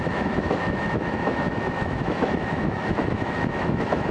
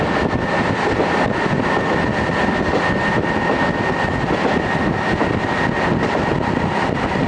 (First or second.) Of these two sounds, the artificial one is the first